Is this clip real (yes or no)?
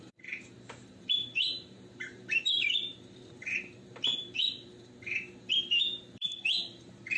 no